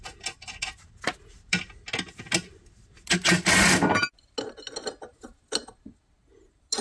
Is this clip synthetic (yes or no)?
no